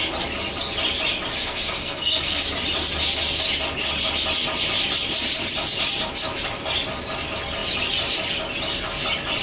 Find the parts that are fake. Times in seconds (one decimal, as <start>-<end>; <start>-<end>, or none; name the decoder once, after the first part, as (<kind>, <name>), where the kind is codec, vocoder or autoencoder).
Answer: 1.4-2.4 (codec, SNAC)